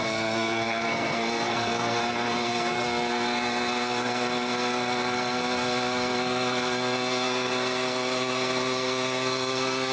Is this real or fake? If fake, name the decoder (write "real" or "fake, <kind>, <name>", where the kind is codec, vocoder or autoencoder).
fake, codec, SNAC